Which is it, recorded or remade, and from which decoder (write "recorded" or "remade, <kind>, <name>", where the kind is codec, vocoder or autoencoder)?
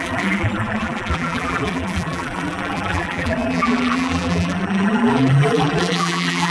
remade, vocoder, BigVGAN v2